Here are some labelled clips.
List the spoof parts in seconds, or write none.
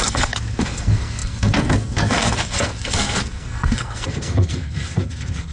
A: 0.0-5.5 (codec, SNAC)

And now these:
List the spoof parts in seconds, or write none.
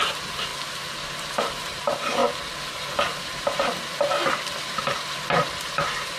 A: 0.0-0.5 (vocoder, BigVGAN v2); 1.2-2.2; 5.4-6.2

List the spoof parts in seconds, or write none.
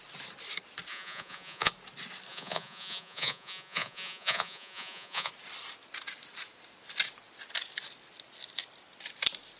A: 0.9-1.7 (vocoder, Vocos); 2.3-5.3